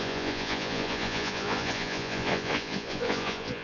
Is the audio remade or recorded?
remade